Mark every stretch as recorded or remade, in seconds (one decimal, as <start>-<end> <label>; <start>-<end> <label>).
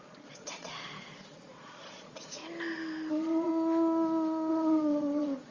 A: 0.0-0.7 remade; 0.7-1.3 recorded; 1.3-2.4 remade; 2.4-3.1 recorded; 3.1-3.5 remade; 3.5-4.5 recorded; 4.5-5.5 remade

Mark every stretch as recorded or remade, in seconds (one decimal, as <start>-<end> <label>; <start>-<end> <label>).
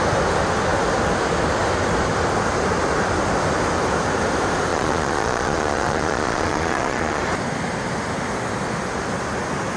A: 0.0-4.7 recorded; 4.7-7.2 remade; 7.2-9.8 recorded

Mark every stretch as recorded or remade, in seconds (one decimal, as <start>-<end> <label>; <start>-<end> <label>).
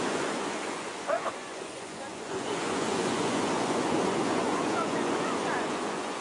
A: 0.0-6.2 remade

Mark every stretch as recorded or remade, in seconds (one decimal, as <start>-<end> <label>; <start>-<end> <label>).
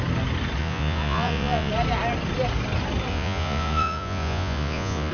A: 0.0-0.6 recorded; 0.6-1.7 remade; 1.7-3.1 recorded; 3.1-5.1 remade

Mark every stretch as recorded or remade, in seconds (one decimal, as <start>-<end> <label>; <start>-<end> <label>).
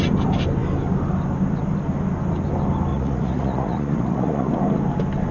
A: 0.0-2.9 recorded; 2.9-4.5 remade; 4.5-5.3 recorded